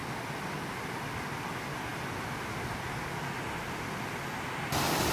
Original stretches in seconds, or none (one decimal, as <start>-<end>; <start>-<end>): 0.0-5.1